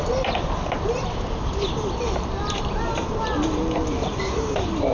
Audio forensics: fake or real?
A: real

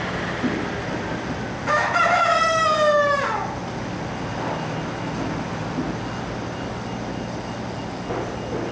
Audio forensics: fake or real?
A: real